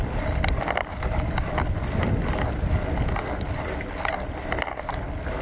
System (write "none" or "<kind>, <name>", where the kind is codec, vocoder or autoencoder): none